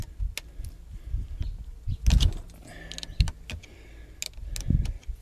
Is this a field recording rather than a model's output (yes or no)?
yes